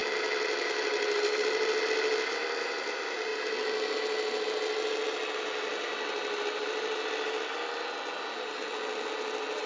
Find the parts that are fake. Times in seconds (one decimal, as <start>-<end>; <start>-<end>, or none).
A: none